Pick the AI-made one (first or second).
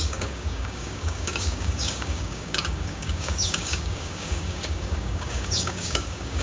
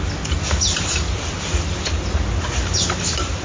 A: first